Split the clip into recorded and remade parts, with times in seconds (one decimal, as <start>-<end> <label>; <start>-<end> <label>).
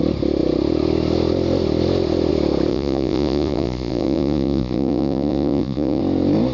0.0-2.7 recorded; 2.7-6.0 remade; 6.0-6.5 recorded